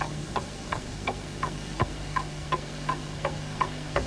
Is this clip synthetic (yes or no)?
yes